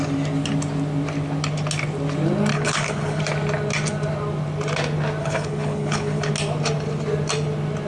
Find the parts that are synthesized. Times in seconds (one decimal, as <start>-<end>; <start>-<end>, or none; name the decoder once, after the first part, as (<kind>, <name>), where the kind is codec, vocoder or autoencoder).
2.5-3.2 (codec, HILCodec); 5.2-6.3

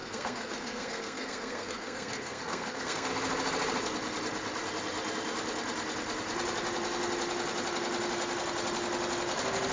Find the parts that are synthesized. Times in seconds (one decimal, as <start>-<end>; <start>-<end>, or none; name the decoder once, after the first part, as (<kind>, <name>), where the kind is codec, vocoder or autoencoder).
0.0-3.1 (codec, SNAC)

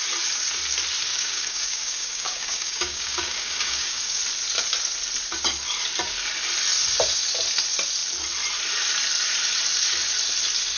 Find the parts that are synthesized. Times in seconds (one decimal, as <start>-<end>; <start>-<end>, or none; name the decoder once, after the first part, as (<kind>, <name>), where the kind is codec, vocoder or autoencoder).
1.1-4.2 (codec, DAC)

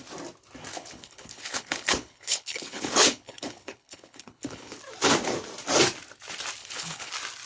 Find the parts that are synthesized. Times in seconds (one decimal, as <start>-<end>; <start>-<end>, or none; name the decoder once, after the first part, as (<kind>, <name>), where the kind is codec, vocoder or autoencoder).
0.7-4.8 (codec, HILCodec); 6.6-7.1

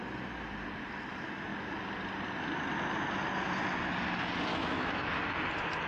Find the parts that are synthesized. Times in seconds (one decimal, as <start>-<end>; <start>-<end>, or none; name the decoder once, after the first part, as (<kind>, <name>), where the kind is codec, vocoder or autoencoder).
4.5-5.1 (autoencoder, DAC-VAE)

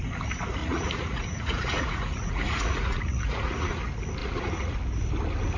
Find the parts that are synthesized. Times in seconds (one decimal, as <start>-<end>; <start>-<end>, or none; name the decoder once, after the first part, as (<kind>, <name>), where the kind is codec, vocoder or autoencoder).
0.6-3.8 (vocoder, Vocos); 4.2-4.8

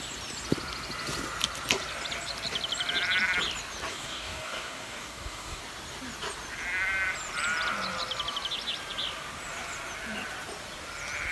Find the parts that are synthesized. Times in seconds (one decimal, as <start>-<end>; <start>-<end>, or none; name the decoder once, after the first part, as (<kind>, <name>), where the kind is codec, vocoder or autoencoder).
3.9-5.6 (codec, DAC)

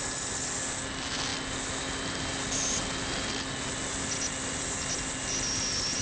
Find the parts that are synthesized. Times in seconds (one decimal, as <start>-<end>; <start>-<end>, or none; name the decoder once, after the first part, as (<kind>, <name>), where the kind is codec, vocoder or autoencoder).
none